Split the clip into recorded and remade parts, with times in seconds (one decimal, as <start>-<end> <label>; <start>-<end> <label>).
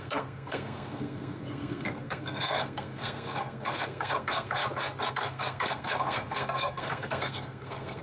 0.0-4.6 remade; 4.6-5.1 recorded; 5.1-8.0 remade